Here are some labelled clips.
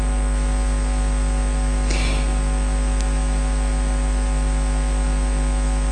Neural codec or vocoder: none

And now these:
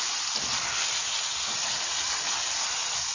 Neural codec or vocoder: none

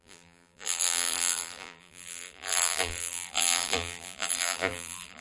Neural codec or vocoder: vocoder, BigVGAN v2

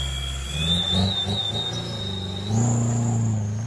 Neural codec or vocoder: none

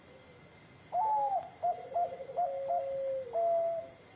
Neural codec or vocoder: none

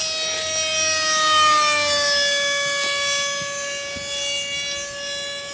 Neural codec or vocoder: none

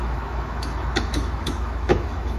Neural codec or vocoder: autoencoder, DAC-VAE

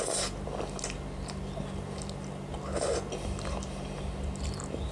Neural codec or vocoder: none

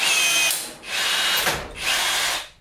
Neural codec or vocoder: none